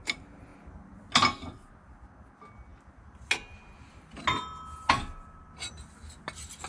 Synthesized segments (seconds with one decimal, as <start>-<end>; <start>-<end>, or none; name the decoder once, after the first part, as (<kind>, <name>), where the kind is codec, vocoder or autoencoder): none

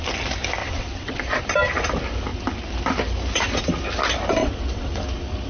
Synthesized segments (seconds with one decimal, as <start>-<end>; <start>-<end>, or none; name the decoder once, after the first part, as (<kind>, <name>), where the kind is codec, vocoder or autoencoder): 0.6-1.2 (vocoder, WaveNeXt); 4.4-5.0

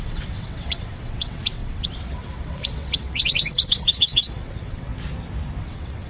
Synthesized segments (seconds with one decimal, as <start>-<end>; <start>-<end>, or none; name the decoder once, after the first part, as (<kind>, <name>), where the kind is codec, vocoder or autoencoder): 0.0-4.9 (vocoder, WaveNeXt); 5.6-6.1